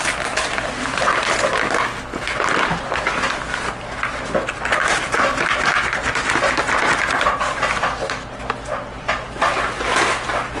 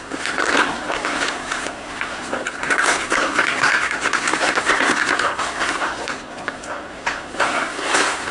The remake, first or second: second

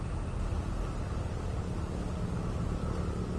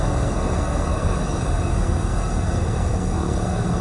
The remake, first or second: second